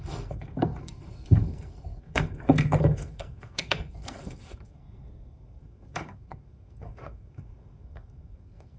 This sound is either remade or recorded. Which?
remade